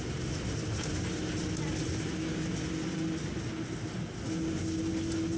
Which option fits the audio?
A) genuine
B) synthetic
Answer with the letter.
A